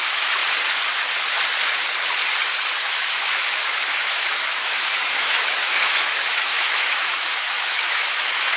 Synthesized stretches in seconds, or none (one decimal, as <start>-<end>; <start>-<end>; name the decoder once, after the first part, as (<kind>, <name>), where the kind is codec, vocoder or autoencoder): 0.0-0.4 (autoencoder, DAC-VAE); 2.8-8.6